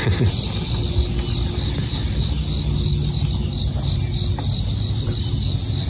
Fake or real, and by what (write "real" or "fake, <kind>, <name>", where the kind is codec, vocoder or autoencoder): real